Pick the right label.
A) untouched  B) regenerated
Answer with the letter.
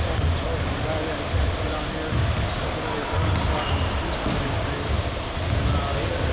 A